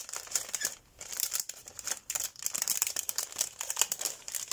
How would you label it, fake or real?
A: fake